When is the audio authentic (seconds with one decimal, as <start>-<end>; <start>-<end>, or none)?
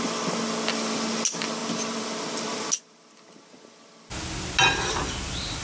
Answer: 0.0-5.6